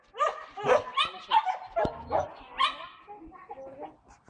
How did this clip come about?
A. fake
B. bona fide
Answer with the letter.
B